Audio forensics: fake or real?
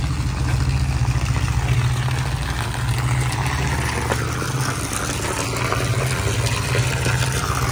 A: real